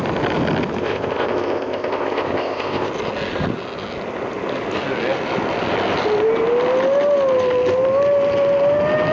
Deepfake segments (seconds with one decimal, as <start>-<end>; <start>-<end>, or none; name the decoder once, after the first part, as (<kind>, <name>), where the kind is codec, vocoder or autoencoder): 0.8-2.9 (codec, ZipCodec)